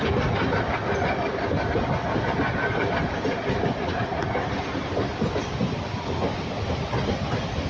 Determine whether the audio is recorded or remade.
recorded